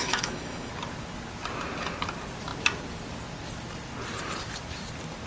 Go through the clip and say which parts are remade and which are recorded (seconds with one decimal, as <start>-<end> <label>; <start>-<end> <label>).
0.0-0.7 remade; 0.7-5.3 recorded